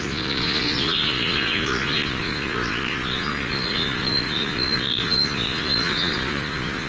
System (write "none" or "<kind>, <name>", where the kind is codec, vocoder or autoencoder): vocoder, Vocos